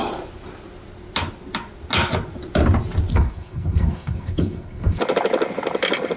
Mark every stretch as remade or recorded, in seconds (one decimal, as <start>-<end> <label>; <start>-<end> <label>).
0.0-3.1 recorded; 3.1-5.0 remade; 5.0-6.2 recorded